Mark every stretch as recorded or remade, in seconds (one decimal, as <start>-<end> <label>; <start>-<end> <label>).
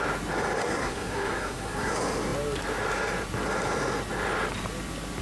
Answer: 0.0-0.6 recorded; 0.6-1.9 remade; 1.9-5.2 recorded